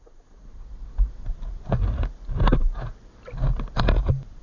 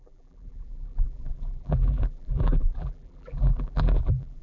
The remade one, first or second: second